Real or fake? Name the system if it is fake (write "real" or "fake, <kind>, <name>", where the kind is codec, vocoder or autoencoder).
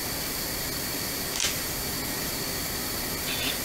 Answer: real